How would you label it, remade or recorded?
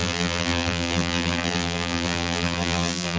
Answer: remade